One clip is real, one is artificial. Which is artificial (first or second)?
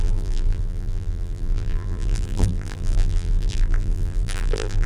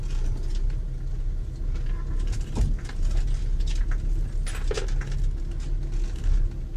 first